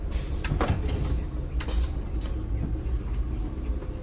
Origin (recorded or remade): recorded